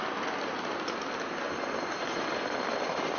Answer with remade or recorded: recorded